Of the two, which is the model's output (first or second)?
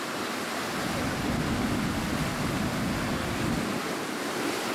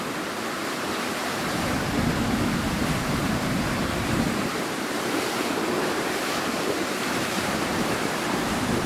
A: second